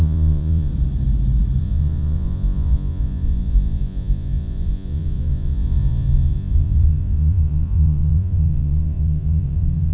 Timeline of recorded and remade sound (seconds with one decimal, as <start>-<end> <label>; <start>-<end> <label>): 0.0-0.7 remade; 0.7-1.6 recorded; 1.6-9.9 remade